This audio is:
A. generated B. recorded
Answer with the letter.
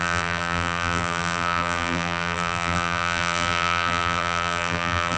A